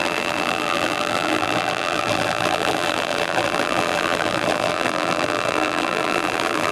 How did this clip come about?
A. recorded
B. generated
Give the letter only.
B